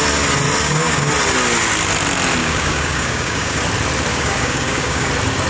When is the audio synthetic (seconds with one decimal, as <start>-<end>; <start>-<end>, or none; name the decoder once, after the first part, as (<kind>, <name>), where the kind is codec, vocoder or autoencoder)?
0.6-1.1 (codec, DAC); 2.4-3.6; 4.1-5.1